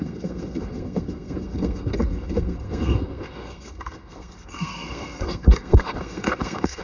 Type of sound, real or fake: fake